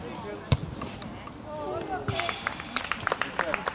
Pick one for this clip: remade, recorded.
recorded